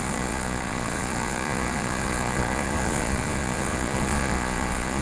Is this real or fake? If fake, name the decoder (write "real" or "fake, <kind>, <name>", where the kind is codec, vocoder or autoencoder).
fake, vocoder, Vocos